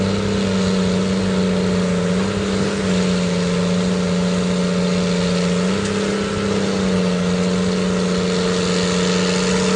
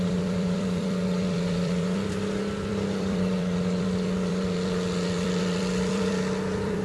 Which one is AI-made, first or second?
second